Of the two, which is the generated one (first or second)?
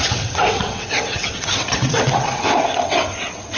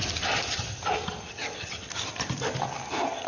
first